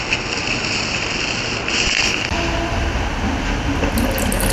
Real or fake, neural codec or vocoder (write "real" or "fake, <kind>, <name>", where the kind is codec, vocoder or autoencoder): real